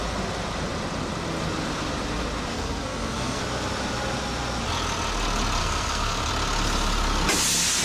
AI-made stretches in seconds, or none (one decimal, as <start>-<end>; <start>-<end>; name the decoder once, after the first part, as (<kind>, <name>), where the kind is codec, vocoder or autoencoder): 2.5-3.4 (codec, SNAC); 5.6-6.3